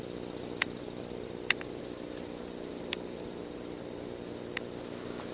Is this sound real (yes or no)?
yes